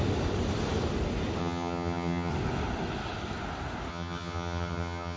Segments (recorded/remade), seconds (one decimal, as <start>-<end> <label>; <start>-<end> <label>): 0.0-1.4 recorded; 1.4-2.3 remade; 2.3-3.9 recorded; 3.9-5.2 remade